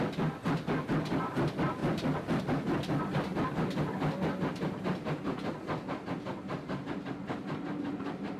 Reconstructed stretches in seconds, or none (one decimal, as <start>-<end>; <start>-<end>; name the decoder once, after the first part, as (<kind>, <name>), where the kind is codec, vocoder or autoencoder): none